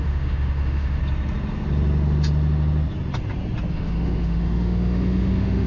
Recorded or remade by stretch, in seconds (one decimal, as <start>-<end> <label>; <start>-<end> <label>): 0.0-1.0 remade; 1.0-3.7 recorded; 3.7-5.7 remade